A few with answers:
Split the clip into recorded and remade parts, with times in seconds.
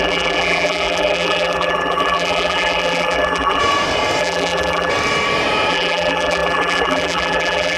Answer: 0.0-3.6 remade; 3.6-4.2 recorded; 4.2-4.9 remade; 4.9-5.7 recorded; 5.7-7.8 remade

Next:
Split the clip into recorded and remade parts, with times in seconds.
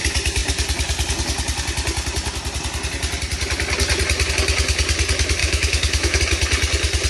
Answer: 0.0-5.4 recorded; 5.4-6.2 remade; 6.2-7.1 recorded